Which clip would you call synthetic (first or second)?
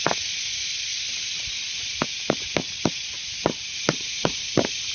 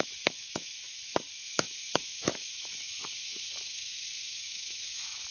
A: second